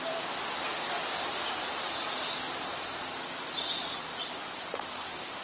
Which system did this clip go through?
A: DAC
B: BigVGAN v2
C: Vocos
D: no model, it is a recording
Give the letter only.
D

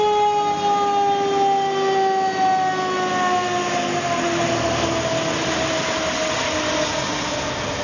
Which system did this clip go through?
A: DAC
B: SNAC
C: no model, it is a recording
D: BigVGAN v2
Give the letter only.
C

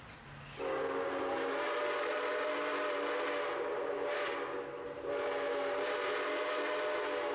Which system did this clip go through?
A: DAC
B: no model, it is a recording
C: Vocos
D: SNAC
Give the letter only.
B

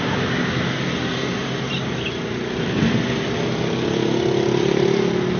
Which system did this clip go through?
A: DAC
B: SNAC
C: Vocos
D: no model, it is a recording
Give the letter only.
D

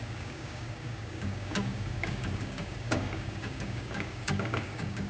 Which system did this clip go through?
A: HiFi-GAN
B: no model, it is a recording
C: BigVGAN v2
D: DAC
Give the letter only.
D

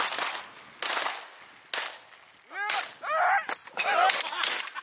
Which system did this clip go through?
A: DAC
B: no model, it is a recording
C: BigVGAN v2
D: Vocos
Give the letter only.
B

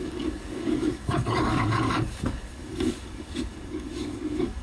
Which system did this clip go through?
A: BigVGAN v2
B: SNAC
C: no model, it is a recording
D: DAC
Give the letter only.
D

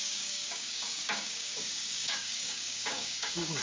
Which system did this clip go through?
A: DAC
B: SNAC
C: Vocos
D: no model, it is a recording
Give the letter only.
A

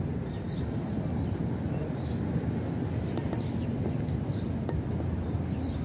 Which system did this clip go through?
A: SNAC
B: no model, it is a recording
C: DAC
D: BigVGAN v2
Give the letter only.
B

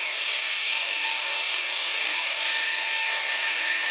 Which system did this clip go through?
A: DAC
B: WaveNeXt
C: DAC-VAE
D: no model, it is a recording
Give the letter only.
A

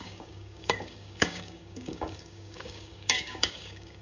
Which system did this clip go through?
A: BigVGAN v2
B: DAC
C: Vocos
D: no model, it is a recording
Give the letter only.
B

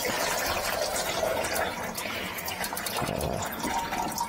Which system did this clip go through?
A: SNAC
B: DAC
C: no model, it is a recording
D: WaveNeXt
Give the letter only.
C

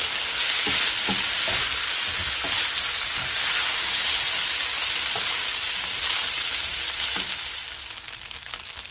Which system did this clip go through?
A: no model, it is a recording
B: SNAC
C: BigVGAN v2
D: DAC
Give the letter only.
A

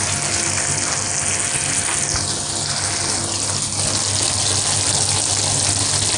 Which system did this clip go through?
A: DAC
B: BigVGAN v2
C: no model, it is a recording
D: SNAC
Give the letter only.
C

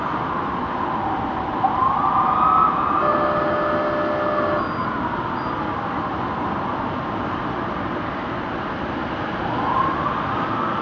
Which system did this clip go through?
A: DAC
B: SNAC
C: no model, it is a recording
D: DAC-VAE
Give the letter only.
C